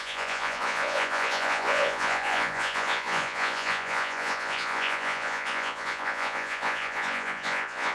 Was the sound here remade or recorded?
remade